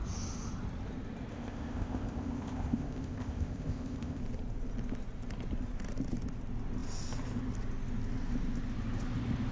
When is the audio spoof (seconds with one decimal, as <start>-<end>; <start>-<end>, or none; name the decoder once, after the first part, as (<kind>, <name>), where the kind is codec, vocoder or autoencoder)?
1.3-4.2 (codec, ZipCodec)